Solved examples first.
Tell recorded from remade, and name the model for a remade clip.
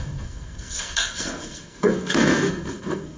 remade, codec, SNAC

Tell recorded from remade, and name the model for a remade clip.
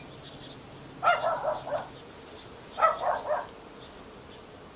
recorded